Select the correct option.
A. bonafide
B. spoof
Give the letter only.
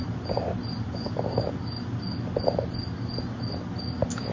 A